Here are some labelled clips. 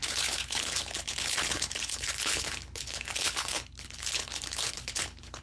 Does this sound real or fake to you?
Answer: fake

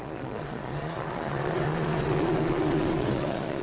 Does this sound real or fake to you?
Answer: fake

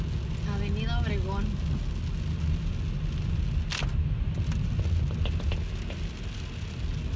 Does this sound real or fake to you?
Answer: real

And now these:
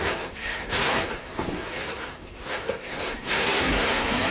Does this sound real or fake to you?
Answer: fake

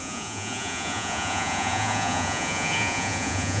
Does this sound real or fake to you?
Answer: fake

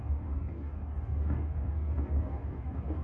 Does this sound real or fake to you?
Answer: fake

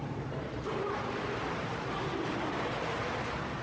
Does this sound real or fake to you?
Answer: fake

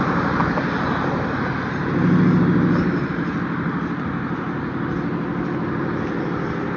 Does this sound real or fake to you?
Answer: real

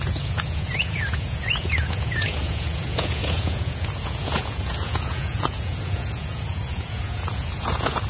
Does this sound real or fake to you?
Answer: fake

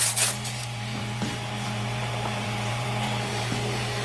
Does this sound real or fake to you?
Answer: fake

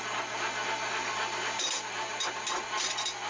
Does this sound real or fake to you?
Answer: real